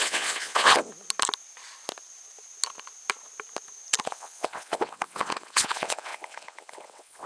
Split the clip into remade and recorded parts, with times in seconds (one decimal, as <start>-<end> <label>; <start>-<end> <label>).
0.0-0.9 remade; 0.9-4.0 recorded; 4.0-7.3 remade